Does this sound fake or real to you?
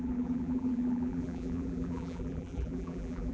fake